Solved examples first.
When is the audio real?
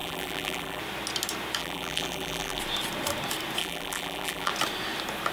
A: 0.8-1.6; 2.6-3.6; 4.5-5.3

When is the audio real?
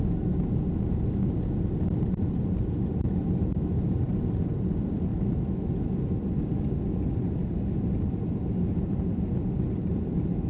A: 0.0-5.1; 5.7-10.5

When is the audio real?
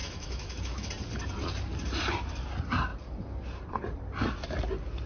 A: 0.9-5.1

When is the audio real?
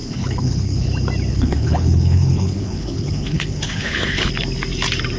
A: 0.9-1.3; 4.3-5.2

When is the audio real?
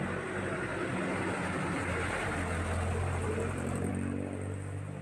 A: 0.0-0.9; 2.4-2.9; 3.9-5.0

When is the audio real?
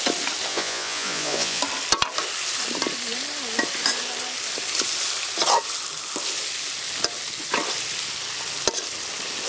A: 0.0-0.5; 1.6-9.5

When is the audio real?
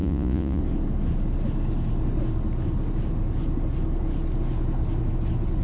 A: 0.6-5.6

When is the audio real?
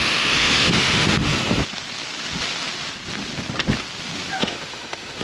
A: 1.3-4.4